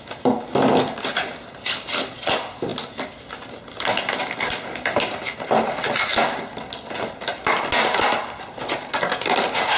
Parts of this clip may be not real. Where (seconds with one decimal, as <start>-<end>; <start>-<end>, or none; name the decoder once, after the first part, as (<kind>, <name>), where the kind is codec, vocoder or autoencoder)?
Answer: none